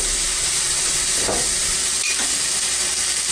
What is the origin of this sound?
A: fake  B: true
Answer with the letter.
B